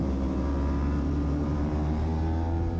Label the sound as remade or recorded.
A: remade